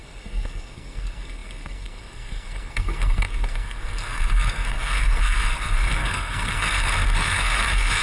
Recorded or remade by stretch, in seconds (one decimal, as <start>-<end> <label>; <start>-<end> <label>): 0.0-8.0 remade